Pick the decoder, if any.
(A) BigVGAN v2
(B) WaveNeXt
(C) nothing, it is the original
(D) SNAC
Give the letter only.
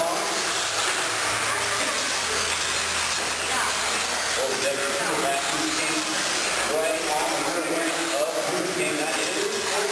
C